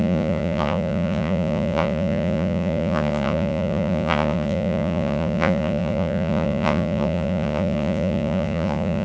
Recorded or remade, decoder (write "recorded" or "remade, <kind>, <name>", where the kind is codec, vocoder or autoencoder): remade, vocoder, Vocos